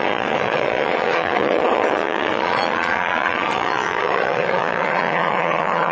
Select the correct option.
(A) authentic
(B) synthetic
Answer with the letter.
B